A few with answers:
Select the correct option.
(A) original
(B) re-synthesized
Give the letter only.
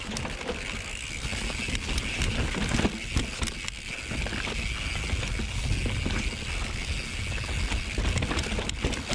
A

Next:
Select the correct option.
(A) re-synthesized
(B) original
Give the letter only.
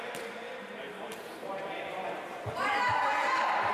A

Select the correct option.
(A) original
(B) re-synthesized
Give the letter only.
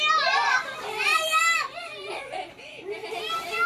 A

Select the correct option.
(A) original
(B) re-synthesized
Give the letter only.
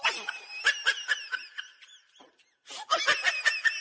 A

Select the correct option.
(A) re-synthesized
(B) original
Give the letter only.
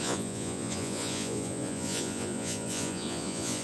A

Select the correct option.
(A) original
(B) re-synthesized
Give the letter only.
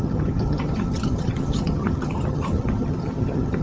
B